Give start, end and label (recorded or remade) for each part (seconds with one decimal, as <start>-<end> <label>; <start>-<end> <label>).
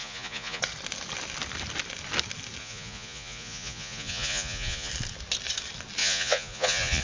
0.0-0.6 remade; 0.6-2.6 recorded; 2.6-4.9 remade; 4.9-6.0 recorded; 6.0-7.0 remade